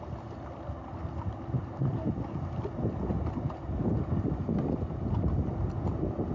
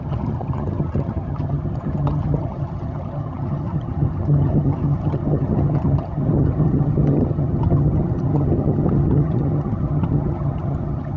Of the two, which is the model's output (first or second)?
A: second